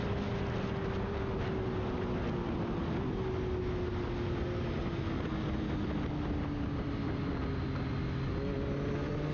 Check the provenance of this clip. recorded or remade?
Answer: recorded